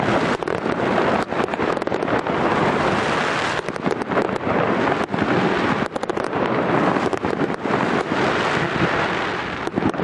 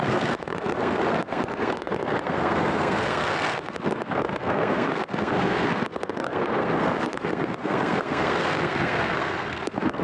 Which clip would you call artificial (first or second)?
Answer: second